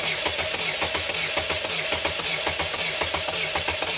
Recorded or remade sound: recorded